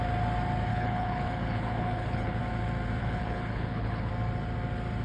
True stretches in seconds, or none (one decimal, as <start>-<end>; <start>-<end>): 0.0-0.7; 2.4-3.0; 4.1-5.0